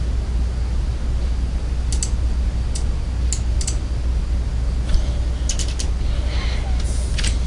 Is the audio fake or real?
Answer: real